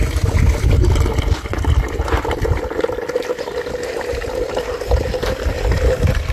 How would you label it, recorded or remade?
recorded